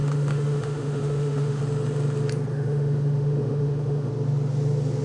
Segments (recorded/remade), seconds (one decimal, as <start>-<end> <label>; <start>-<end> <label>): 0.0-1.6 remade; 1.6-2.5 recorded; 2.5-4.1 remade; 4.1-5.0 recorded